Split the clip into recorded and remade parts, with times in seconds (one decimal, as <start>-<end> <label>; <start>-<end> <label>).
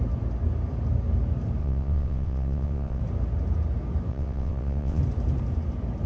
0.0-1.6 recorded; 1.6-3.0 remade; 3.0-4.1 recorded; 4.1-5.0 remade; 5.0-6.1 recorded